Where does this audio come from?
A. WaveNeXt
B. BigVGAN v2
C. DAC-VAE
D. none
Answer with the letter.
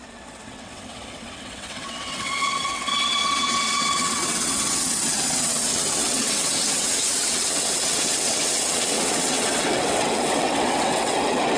A